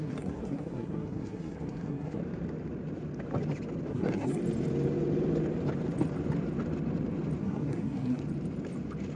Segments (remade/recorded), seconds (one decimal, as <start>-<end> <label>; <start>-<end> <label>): 0.0-2.2 remade; 2.2-3.9 recorded; 3.9-4.4 remade; 4.4-7.4 recorded; 7.4-8.2 remade; 8.2-9.2 recorded